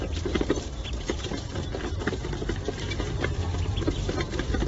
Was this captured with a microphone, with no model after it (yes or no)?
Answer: no